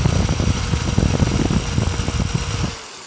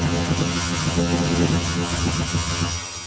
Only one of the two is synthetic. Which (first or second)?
second